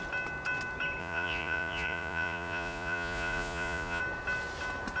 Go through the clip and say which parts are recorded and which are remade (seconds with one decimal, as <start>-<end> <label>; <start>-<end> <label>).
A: 0.0-1.0 recorded; 1.0-4.0 remade; 4.0-5.0 recorded